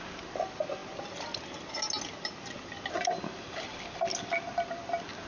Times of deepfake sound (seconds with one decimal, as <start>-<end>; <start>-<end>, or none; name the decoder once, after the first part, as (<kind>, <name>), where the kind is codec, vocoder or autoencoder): none